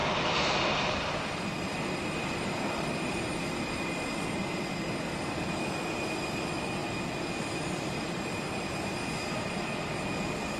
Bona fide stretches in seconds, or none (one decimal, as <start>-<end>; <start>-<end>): 3.9-10.6